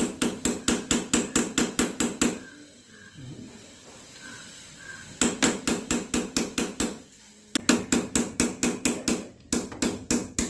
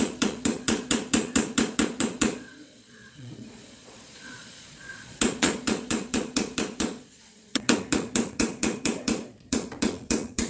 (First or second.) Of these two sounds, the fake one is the second